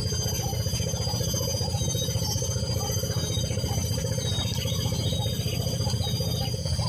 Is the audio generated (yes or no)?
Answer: no